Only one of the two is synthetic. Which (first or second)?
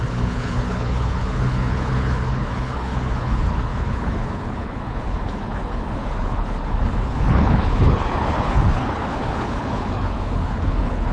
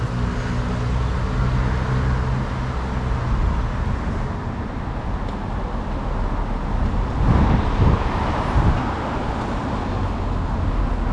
first